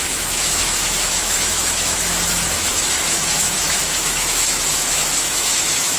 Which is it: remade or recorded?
remade